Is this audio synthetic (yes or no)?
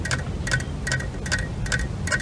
no